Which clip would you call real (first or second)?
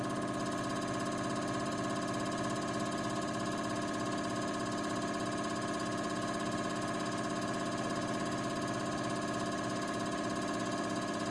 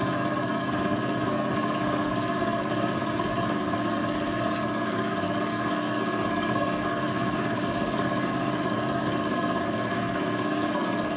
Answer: first